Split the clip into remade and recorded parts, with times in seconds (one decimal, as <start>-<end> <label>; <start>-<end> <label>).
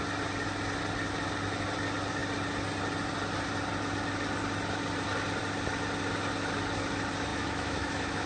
0.0-7.3 recorded; 7.3-8.3 remade